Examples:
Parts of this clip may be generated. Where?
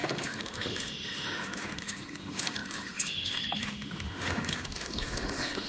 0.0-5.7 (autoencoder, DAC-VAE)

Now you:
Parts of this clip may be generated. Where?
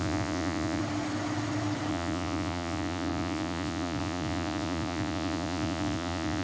0.0-0.8 (vocoder, Vocos); 1.9-6.4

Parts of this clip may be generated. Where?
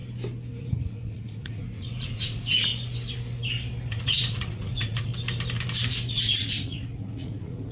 0.6-2.7 (vocoder, Vocos); 3.9-5.1; 6.1-7.7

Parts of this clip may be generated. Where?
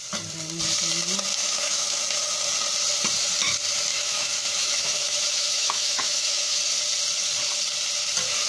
1.3-2.0 (autoencoder, DAC-VAE); 3.9-6.6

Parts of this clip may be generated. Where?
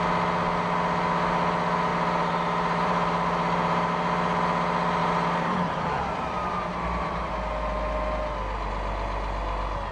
1.9-3.9 (vocoder, BigVGAN v2); 5.0-7.3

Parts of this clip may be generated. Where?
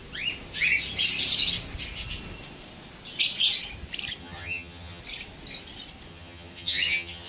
4.2-5.0 (vocoder, HiFi-GAN); 6.1-7.3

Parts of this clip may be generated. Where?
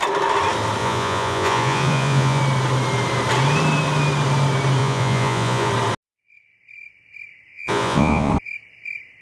0.8-2.4 (vocoder, Vocos); 4.8-5.7; 7.5-8.3